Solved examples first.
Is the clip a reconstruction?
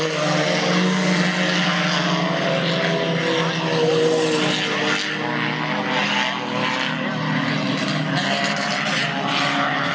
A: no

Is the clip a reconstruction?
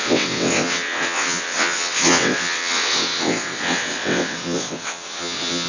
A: yes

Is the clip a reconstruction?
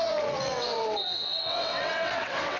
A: yes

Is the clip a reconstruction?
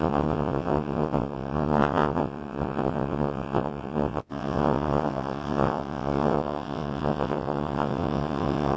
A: yes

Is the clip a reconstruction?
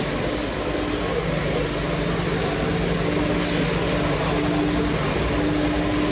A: no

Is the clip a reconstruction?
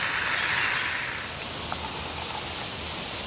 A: no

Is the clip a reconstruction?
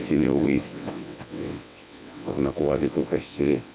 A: yes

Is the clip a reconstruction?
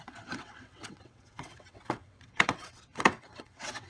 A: yes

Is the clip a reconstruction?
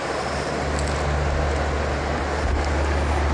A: no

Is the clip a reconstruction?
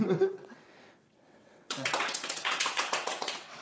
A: yes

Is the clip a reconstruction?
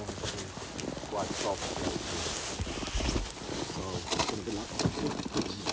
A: no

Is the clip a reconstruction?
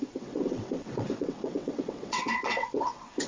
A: yes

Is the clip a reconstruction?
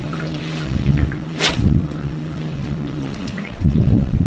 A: yes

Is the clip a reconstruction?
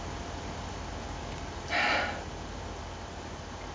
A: no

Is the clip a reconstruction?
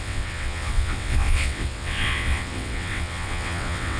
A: yes